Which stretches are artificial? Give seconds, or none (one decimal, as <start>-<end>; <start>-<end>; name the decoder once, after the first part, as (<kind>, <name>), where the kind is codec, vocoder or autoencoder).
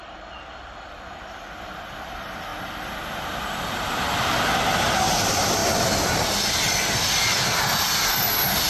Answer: none